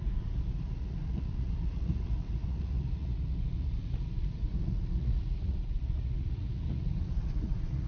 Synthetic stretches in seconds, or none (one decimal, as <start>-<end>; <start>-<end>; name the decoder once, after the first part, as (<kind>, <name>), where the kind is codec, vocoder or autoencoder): 0.0-7.9 (vocoder, Vocos)